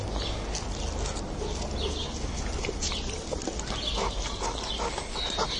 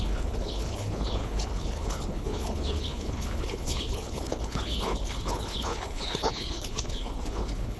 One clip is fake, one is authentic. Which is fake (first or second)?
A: second